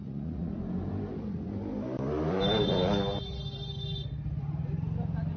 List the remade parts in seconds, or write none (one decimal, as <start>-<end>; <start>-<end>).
0.0-0.5